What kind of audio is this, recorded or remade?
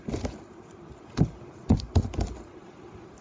recorded